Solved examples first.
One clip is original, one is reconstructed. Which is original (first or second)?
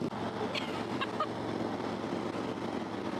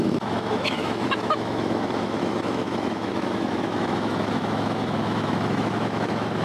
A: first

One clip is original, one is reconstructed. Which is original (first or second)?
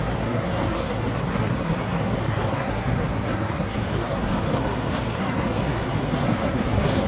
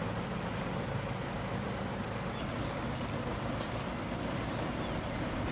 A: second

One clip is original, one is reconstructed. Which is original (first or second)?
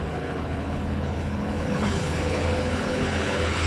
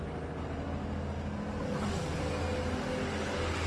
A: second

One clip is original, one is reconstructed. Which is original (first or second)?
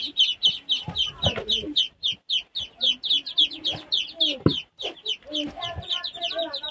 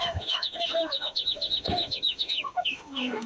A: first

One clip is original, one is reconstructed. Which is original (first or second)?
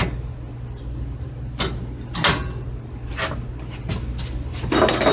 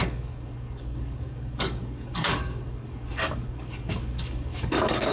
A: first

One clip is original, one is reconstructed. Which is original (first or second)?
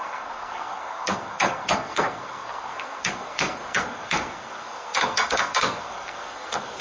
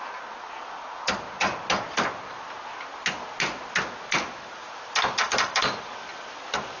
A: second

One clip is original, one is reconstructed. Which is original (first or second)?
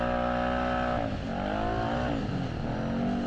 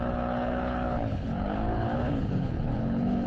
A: first